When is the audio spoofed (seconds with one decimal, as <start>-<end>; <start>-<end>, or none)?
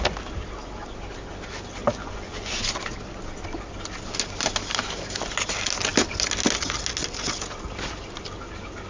1.8-2.6